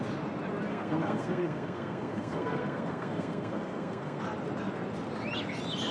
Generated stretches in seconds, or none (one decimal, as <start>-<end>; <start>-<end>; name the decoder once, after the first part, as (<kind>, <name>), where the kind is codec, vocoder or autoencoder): 0.7-4.2 (codec, SNAC)